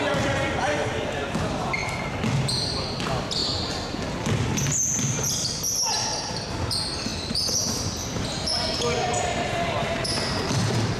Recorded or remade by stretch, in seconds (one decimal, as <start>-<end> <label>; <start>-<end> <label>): 0.0-1.8 remade; 1.8-2.5 recorded; 2.5-3.4 remade; 3.4-6.3 recorded; 6.3-11.0 remade